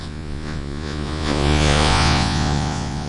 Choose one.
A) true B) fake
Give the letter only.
B